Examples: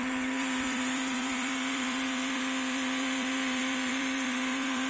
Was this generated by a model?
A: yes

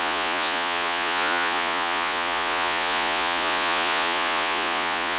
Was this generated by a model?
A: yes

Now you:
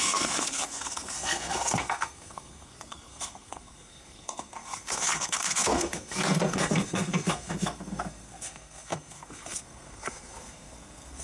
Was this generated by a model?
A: yes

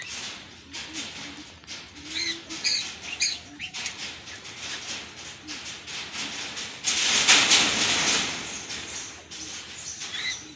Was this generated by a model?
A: yes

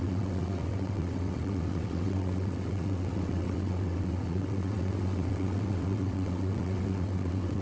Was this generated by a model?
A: yes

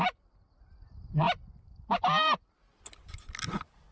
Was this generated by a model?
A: yes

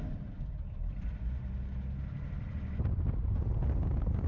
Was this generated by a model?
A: no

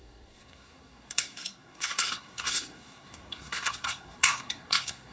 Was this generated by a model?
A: yes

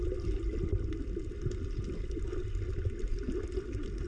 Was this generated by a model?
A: no